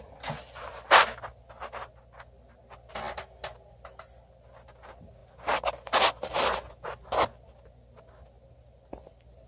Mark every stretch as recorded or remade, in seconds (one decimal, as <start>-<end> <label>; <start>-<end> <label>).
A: 0.0-9.5 recorded